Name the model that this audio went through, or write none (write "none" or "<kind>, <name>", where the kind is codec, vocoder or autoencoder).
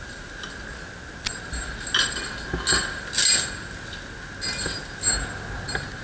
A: none